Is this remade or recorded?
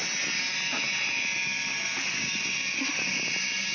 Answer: recorded